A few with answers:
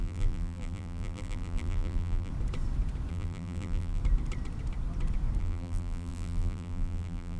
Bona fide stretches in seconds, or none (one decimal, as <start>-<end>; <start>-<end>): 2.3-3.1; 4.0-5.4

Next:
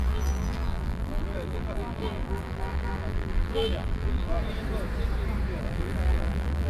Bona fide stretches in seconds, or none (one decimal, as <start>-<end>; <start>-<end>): 4.4-5.6

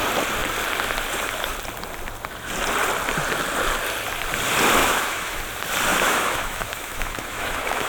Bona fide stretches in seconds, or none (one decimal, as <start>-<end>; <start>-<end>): 0.0-4.8; 5.4-5.9

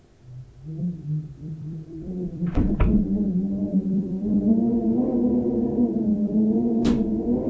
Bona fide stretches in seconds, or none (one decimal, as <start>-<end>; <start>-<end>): 0.0-0.8; 3.0-3.7; 4.5-6.1; 6.8-7.5